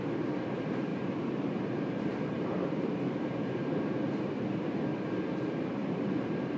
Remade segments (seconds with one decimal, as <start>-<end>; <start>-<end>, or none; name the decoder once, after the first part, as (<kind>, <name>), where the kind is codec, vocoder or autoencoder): 0.9-4.4 (vocoder, BigVGAN v2); 5.8-6.6